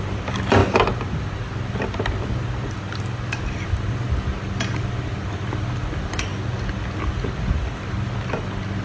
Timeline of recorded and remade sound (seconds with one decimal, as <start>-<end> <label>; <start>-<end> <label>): 0.0-8.8 recorded